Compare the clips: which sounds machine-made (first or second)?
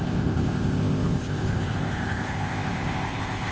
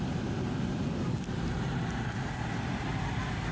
first